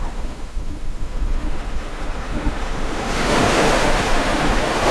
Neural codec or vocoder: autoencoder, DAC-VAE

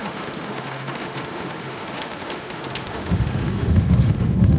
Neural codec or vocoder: autoencoder, DAC-VAE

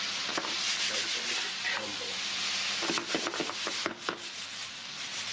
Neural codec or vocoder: none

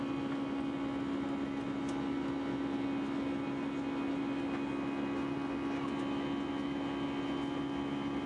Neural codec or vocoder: none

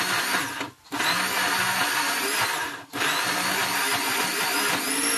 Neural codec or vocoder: none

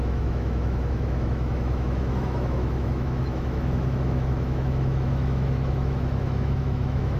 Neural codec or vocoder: autoencoder, DAC-VAE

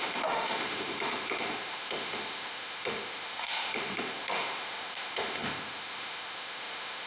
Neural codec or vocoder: autoencoder, DAC-VAE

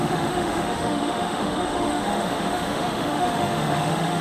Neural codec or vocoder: autoencoder, DAC-VAE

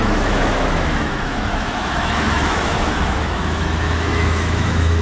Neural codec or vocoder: autoencoder, DAC-VAE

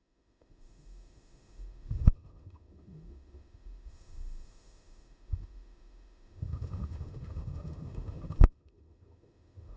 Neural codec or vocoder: autoencoder, DAC-VAE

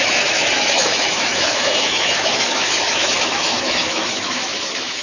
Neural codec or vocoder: autoencoder, DAC-VAE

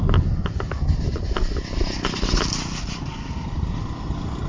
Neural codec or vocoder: none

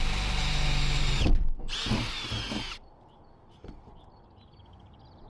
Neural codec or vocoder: none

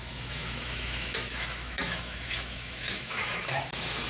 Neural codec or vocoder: autoencoder, DAC-VAE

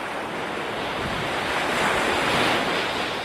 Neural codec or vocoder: none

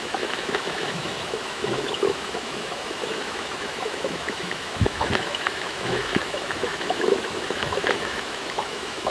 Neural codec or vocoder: autoencoder, DAC-VAE